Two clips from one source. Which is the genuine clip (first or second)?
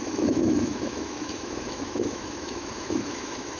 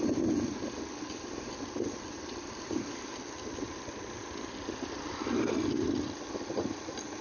second